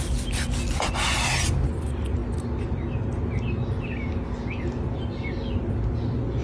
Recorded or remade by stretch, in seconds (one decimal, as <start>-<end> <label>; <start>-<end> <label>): 0.0-6.4 recorded